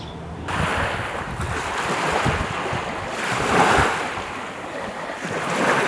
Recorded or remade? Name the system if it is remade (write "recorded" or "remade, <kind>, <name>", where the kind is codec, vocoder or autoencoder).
recorded